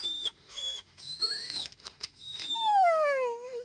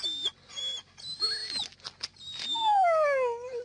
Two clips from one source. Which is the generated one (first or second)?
first